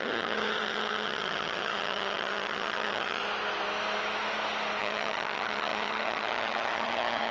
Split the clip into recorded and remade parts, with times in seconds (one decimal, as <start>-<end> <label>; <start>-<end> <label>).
0.0-3.2 remade; 3.2-4.8 recorded; 4.8-7.3 remade